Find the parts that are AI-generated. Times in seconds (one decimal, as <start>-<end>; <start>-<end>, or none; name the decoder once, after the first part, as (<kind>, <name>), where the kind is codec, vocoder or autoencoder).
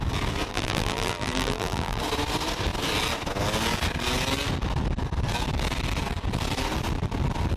0.5-2.0 (vocoder, BigVGAN v2)